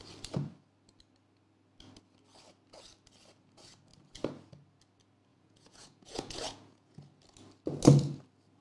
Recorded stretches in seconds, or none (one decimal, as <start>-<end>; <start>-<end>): 0.0-5.3; 7.0-8.6